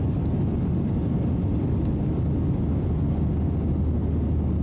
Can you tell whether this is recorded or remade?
recorded